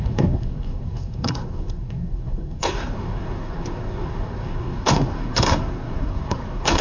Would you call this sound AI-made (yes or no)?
yes